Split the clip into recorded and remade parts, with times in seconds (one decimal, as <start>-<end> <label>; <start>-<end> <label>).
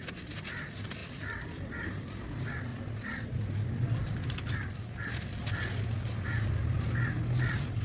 0.0-1.0 recorded; 1.0-2.0 remade; 2.0-2.7 recorded; 2.7-4.5 remade; 4.5-7.8 recorded